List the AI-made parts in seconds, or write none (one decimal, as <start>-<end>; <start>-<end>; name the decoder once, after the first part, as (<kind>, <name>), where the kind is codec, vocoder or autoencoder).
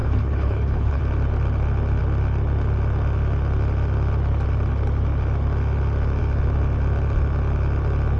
0.0-1.0 (codec, HILCodec)